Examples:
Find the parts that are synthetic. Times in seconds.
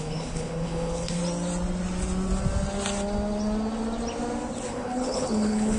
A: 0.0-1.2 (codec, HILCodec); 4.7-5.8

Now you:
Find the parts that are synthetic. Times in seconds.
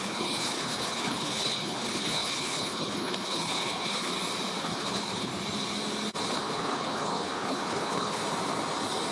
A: 0.0-4.1 (codec, HILCodec); 4.6-5.3; 6.3-8.2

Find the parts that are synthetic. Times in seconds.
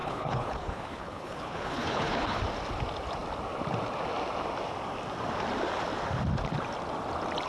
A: 0.0-2.4 (codec, HILCodec)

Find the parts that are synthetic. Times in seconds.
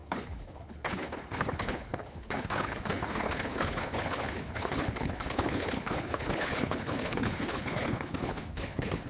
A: 0.0-9.1 (codec, HILCodec)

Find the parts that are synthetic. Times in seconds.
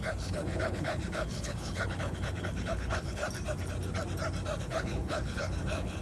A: 0.0-3.2 (codec, HILCodec); 4.6-6.0